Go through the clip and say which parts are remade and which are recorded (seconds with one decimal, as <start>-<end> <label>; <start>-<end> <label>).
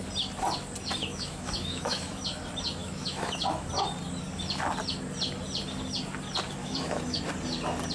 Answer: 0.0-1.0 recorded; 1.0-2.2 remade; 2.2-2.8 recorded; 2.8-3.7 remade; 3.7-6.6 recorded; 6.6-7.2 remade; 7.2-7.9 recorded